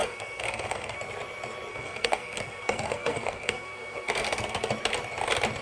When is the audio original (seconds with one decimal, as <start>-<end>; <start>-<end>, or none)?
1.0-1.7; 4.7-5.6